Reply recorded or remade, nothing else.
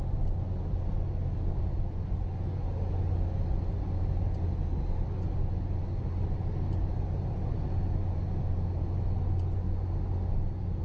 recorded